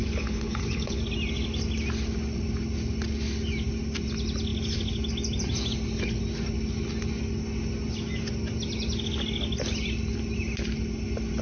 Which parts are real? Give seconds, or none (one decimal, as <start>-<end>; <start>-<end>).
1.0-11.4